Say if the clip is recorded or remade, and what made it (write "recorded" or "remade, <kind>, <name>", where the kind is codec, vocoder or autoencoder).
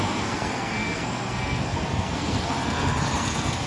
remade, codec, SNAC